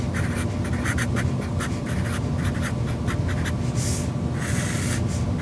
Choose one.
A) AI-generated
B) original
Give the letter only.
B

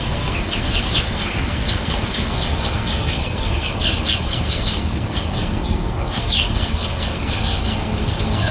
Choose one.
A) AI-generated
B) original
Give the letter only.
A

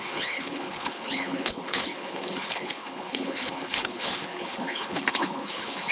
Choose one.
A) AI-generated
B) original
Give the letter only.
A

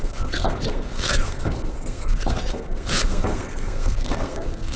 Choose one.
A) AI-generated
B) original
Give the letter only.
A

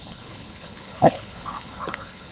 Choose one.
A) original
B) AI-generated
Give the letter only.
B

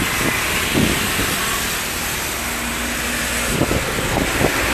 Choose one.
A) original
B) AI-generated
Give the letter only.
A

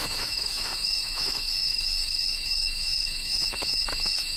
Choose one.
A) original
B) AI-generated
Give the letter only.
B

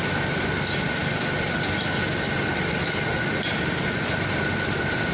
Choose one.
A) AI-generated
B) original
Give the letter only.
B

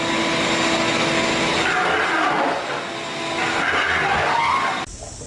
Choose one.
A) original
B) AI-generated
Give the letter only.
A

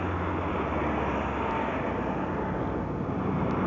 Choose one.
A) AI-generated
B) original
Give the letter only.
B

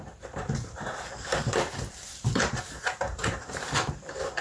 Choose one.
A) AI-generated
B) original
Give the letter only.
A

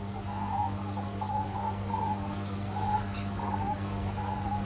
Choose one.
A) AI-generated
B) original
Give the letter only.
A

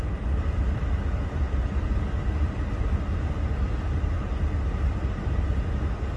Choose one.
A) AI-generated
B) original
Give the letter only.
B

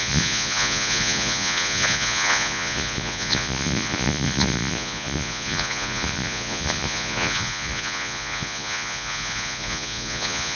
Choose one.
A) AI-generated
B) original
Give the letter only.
A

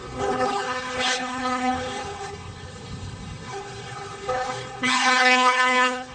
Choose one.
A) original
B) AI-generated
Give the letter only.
B